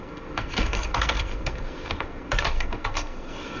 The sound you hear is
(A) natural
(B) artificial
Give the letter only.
B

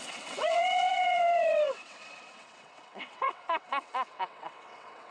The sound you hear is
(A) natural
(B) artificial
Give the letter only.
B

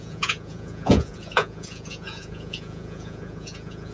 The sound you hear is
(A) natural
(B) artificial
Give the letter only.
B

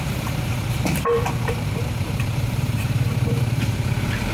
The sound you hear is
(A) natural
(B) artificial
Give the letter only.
B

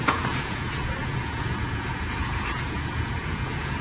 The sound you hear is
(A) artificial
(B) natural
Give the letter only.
A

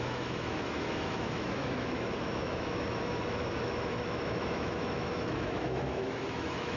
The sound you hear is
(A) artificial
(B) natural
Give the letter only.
A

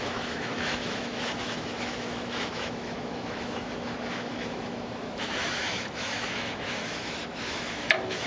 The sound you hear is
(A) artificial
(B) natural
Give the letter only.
A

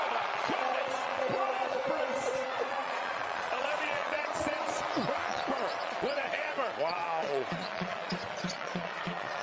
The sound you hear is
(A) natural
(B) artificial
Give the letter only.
B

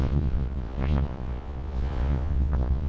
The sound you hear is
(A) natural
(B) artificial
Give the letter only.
B